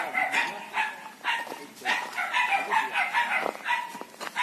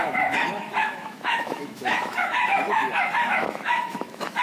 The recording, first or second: first